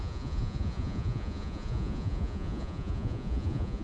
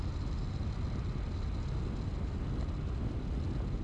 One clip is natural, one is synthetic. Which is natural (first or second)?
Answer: second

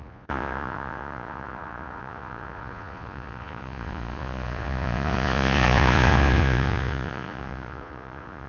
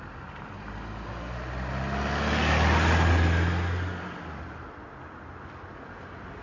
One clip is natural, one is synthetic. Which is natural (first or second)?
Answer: second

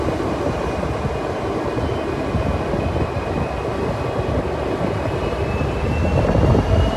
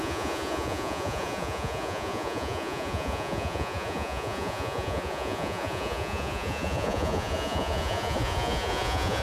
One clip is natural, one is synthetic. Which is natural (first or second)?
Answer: first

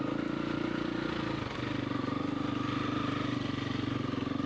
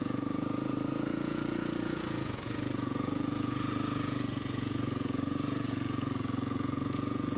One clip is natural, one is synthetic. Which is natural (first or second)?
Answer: first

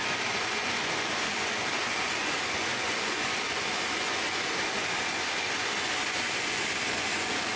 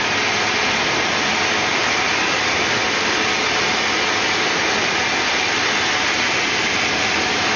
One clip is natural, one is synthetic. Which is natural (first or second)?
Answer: second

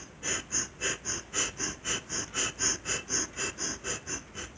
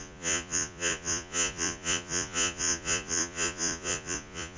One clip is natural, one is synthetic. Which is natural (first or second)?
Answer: first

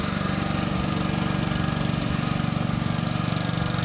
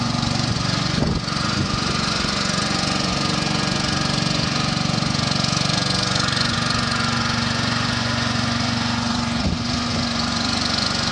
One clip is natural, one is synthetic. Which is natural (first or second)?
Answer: first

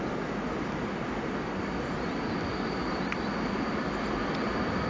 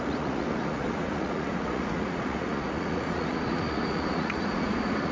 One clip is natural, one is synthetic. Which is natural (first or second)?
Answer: first